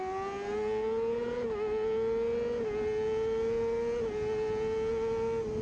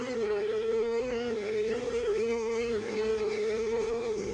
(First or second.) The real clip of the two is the first